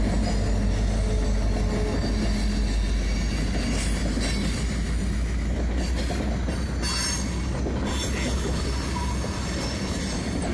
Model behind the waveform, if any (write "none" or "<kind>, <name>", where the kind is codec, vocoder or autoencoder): none